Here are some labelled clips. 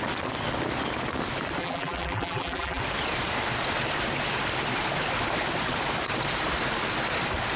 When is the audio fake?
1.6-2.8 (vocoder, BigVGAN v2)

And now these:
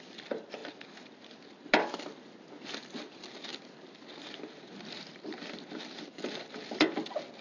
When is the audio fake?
none

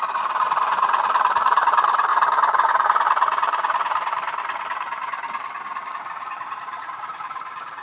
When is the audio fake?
0.0-2.1 (vocoder, BigVGAN v2); 5.9-7.8